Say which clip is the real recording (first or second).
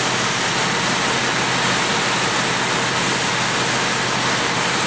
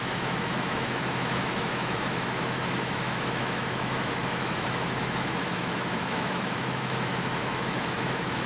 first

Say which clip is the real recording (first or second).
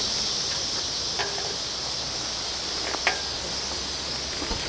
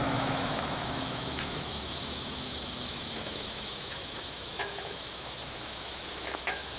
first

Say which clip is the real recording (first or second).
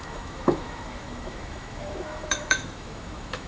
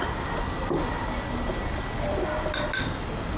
second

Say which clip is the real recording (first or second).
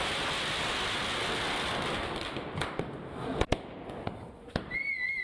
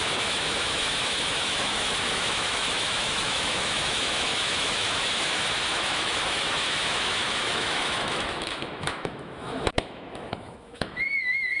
first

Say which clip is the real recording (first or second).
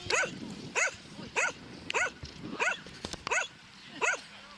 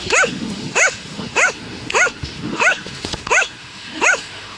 first